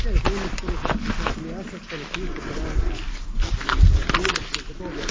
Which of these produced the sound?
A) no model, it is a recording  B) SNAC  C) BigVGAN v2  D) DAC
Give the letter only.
A